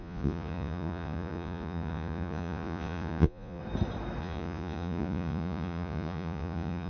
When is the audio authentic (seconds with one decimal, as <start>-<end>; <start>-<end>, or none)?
3.6-4.2